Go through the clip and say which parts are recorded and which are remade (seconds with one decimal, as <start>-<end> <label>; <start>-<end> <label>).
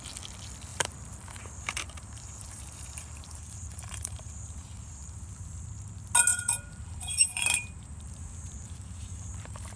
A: 0.0-0.7 recorded; 0.7-5.7 remade; 5.7-6.3 recorded; 6.3-9.8 remade